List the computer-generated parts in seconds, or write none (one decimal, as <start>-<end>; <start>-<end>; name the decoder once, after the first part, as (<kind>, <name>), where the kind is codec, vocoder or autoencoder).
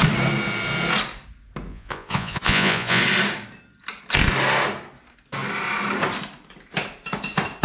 1.7-3.0 (vocoder, Vocos)